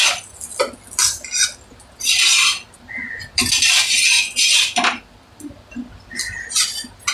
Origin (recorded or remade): recorded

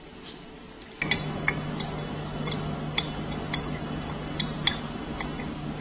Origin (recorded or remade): recorded